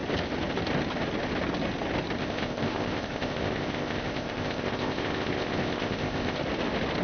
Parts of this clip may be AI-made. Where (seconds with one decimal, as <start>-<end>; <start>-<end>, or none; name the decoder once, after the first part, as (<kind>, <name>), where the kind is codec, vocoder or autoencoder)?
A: 2.2-6.4 (codec, ZipCodec)